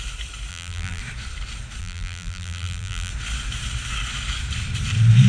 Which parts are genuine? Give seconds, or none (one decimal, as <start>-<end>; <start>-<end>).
0.0-0.5; 1.0-1.8; 3.1-5.3